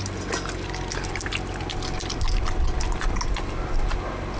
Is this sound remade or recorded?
recorded